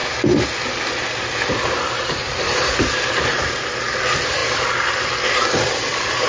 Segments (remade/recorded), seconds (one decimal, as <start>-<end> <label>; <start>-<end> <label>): 0.0-6.3 recorded